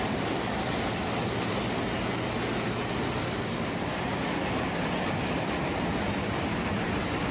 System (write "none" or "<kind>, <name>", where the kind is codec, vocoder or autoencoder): none